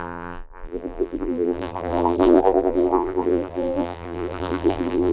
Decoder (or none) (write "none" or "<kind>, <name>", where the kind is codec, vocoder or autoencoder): vocoder, BigVGAN v2